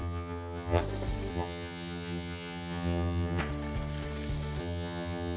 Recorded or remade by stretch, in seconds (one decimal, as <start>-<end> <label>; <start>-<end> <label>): 0.0-0.8 remade; 0.8-1.3 recorded; 1.3-3.4 remade; 3.4-4.6 recorded; 4.6-5.4 remade